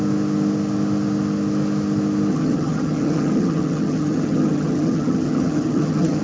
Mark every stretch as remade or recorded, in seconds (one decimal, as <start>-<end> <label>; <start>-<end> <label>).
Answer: 0.0-2.3 recorded; 2.3-6.2 remade